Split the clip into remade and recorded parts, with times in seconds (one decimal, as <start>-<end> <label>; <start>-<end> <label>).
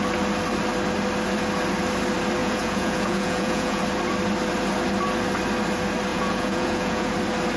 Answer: 0.0-2.4 recorded; 2.4-3.8 remade; 3.8-6.1 recorded; 6.1-7.1 remade; 7.1-7.6 recorded